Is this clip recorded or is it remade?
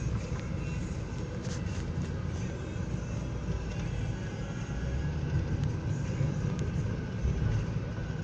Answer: recorded